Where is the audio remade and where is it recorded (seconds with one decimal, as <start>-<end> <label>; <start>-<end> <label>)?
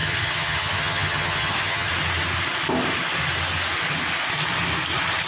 0.0-1.9 remade; 1.9-5.3 recorded